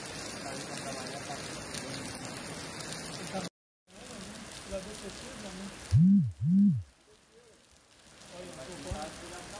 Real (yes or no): yes